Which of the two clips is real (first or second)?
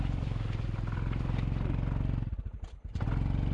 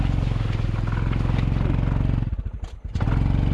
second